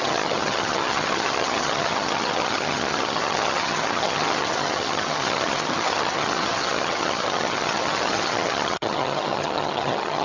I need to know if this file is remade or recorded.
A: remade